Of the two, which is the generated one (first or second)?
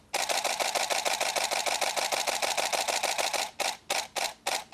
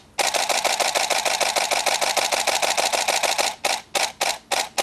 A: first